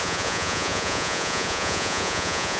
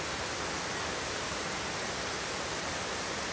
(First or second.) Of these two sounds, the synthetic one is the first